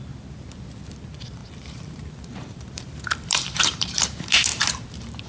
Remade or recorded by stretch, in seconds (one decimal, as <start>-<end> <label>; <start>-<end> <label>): 0.0-1.4 recorded; 1.4-4.6 remade; 4.6-5.3 recorded